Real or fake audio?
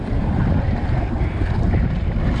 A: real